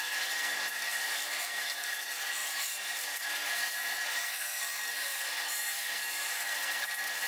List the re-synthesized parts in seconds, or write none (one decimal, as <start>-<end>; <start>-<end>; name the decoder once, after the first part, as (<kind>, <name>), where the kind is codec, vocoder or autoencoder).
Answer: 0.0-7.3 (codec, SNAC)